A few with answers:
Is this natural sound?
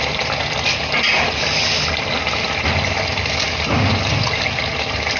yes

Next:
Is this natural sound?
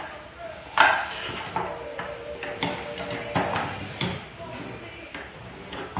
yes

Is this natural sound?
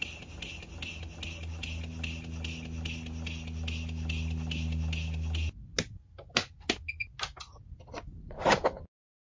yes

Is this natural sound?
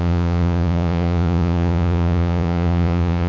no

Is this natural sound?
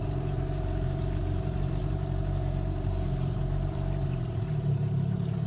no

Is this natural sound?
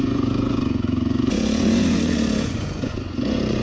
no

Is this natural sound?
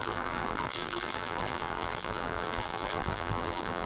no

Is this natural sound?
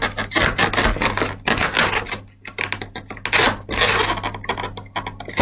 yes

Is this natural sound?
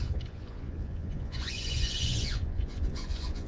no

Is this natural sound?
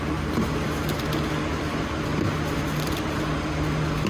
yes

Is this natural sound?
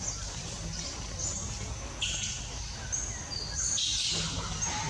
yes